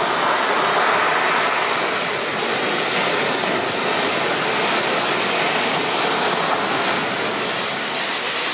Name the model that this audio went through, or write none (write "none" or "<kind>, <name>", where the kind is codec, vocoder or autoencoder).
none